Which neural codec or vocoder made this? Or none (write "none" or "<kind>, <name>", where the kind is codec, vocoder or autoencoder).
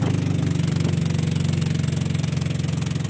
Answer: none